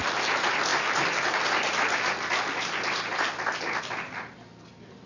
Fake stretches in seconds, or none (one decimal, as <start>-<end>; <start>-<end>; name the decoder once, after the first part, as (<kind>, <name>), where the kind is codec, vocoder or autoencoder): none